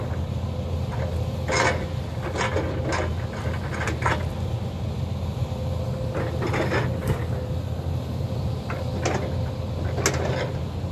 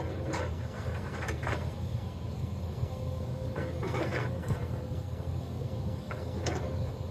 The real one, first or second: first